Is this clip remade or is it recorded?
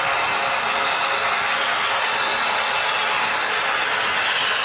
recorded